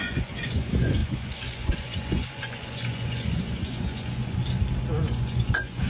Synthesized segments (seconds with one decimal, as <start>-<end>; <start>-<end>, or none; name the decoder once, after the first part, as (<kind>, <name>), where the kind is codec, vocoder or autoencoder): 0.0-4.4 (vocoder, Vocos); 5.0-5.9